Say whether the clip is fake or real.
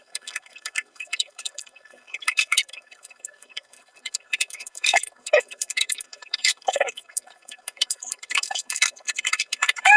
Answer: fake